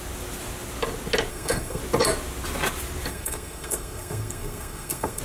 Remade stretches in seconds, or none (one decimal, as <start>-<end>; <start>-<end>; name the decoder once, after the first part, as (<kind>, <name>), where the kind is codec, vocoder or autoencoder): 1.3-1.8 (codec, SNAC); 3.1-5.2